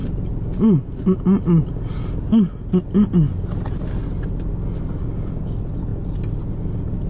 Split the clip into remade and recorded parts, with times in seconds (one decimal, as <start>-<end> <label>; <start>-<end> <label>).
0.0-7.1 recorded